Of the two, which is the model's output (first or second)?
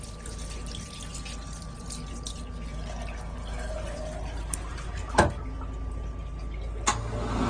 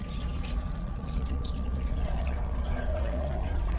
second